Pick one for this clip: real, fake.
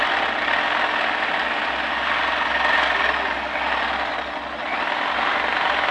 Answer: real